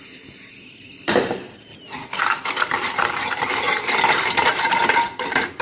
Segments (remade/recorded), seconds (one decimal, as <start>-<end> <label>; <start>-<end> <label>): 0.0-1.7 remade; 1.7-2.2 recorded; 2.2-5.6 remade